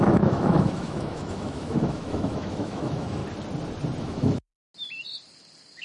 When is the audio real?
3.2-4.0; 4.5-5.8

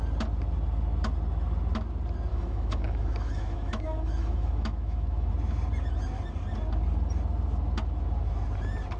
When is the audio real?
0.0-2.3; 5.3-9.0

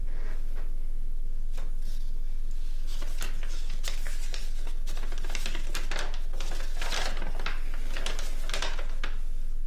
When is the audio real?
0.0-9.7

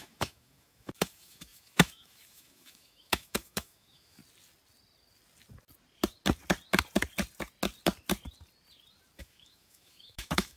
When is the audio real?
4.2-9.2

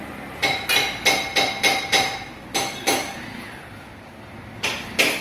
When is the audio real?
0.0-5.2

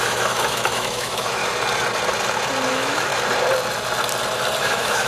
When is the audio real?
1.4-2.7; 3.1-4.6